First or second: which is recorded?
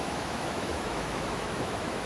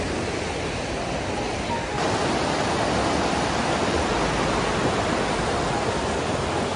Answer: second